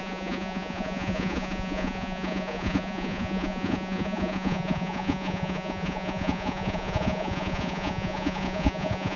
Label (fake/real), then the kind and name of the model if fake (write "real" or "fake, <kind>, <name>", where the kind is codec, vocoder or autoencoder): fake, vocoder, Vocos